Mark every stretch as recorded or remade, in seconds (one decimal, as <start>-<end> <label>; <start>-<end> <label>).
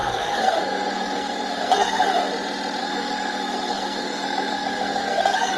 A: 0.0-2.3 remade; 2.3-2.8 recorded; 2.8-5.6 remade